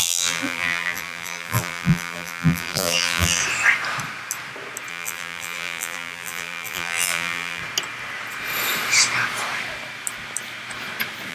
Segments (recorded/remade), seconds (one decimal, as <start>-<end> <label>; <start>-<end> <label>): 0.0-3.4 remade; 3.4-4.9 recorded; 4.9-7.6 remade; 7.6-11.3 recorded